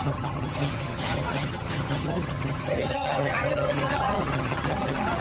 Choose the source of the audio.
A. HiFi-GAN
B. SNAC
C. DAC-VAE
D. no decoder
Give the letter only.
A